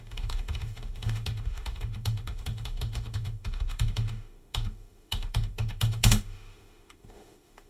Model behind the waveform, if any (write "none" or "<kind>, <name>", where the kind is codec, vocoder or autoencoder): autoencoder, DAC-VAE